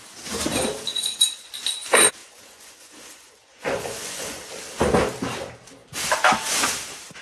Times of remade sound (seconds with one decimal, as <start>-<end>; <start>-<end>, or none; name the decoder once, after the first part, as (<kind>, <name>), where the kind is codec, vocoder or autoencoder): 0.9-1.5 (vocoder, Vocos); 2.2-4.5